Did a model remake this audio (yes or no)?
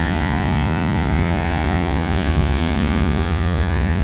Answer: yes